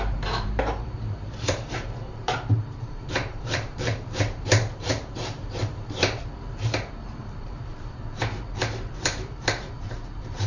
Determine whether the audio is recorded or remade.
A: remade